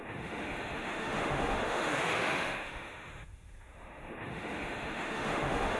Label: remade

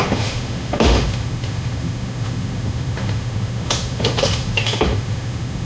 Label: remade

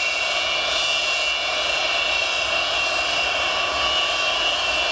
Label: recorded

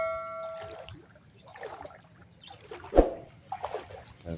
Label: recorded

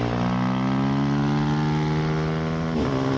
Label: recorded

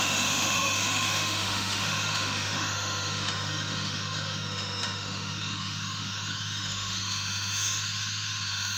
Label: remade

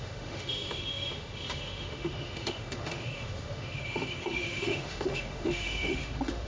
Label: remade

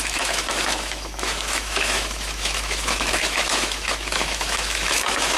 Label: remade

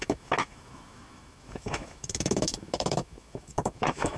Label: remade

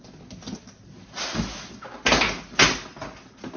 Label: recorded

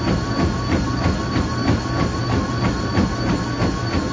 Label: recorded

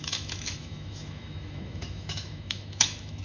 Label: remade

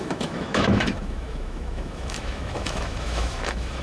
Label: remade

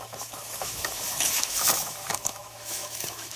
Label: remade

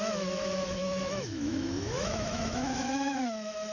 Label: remade